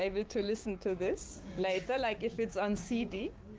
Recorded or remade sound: remade